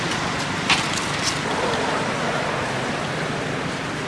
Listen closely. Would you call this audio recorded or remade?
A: recorded